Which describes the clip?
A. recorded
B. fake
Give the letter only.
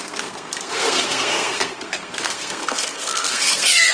B